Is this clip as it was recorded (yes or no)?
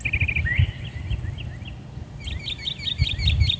yes